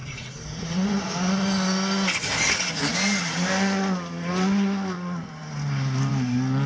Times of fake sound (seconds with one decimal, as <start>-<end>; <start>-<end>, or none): 0.0-1.0